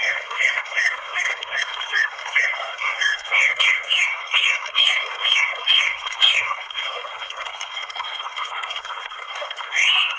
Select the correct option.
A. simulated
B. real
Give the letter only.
A